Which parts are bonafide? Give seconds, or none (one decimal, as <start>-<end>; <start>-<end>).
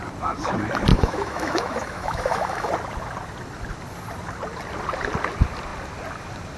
0.0-0.9; 2.7-6.6